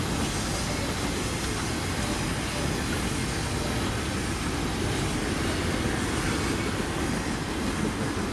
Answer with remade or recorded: recorded